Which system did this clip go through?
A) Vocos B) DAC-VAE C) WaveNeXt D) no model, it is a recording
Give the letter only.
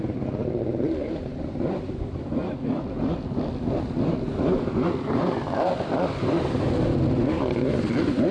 D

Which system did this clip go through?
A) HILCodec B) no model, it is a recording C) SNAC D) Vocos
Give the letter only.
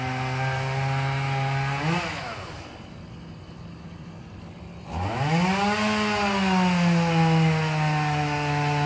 B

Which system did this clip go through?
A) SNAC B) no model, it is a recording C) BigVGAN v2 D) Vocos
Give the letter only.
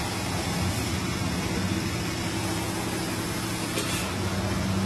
B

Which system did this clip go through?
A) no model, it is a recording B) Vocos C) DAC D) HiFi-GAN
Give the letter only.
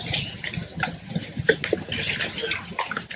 A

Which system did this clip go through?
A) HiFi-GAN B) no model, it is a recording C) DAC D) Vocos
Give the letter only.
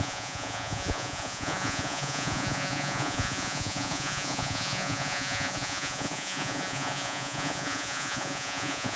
D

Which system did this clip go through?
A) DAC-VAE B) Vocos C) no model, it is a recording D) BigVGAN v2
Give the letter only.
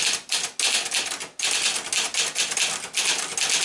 C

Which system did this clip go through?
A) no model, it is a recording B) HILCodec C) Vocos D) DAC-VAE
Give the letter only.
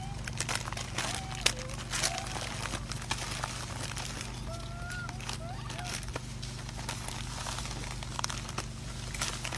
A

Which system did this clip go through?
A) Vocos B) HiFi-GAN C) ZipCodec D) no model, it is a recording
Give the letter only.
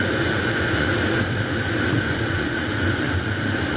A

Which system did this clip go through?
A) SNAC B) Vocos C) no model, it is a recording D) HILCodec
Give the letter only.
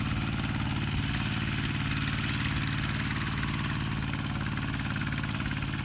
C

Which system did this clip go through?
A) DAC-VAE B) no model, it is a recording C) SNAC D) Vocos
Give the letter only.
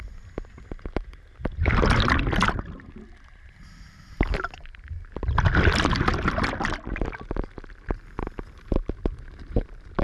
B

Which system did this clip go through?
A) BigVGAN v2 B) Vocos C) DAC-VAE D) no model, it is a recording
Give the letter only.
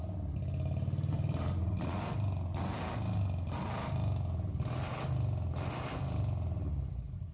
D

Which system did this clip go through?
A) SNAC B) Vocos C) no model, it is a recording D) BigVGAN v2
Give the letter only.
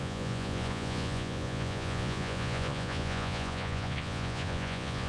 B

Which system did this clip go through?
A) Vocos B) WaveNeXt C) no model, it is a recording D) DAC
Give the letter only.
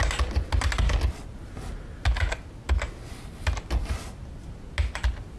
C